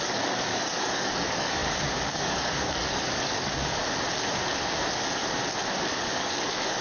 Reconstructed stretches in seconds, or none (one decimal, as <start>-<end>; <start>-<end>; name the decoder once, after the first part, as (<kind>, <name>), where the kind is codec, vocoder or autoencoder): 0.0-3.8 (codec, DAC); 5.9-6.8